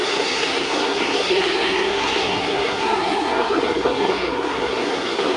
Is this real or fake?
fake